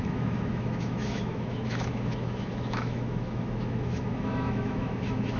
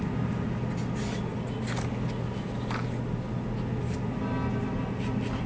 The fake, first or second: first